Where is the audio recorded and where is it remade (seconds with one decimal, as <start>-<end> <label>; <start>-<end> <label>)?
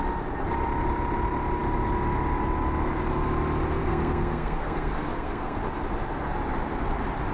0.0-3.8 recorded; 3.8-5.6 remade; 5.6-7.3 recorded